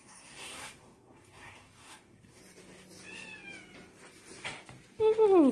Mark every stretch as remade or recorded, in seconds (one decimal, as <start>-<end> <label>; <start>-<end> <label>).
0.0-2.4 remade; 2.4-5.5 recorded